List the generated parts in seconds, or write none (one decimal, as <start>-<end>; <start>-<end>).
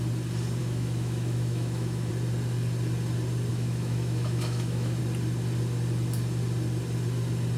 0.6-2.1; 3.5-5.0